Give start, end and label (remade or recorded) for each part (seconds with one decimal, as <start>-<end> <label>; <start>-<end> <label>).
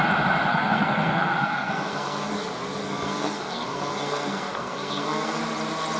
0.0-0.5 recorded; 0.5-2.3 remade; 2.3-2.8 recorded; 2.8-5.4 remade; 5.4-6.0 recorded